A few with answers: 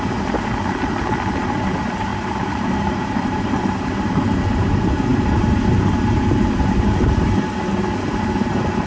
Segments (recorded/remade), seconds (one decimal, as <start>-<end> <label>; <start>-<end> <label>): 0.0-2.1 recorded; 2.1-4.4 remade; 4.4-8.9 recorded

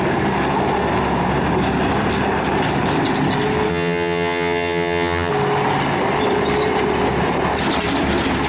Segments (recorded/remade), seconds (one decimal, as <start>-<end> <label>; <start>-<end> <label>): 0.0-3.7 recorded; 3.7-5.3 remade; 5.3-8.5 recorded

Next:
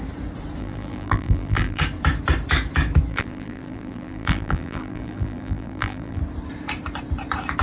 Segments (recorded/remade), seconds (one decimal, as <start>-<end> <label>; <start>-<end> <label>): 0.0-0.6 recorded; 0.6-1.8 remade; 1.8-3.1 recorded; 3.1-6.2 remade; 6.2-7.6 recorded

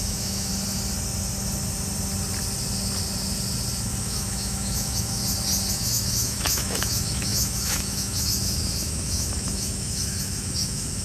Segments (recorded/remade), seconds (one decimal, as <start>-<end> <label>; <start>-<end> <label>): 0.0-0.5 remade; 0.5-4.0 recorded; 4.0-5.2 remade; 5.2-5.7 recorded; 5.7-11.0 remade

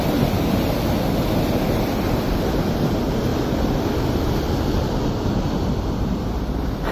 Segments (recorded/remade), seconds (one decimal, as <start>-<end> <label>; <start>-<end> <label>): 0.0-3.3 recorded; 3.3-6.0 remade; 6.0-6.9 recorded

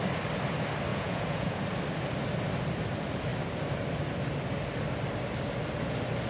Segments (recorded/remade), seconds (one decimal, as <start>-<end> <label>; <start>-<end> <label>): 0.0-0.9 recorded; 0.9-1.6 remade; 1.6-6.3 recorded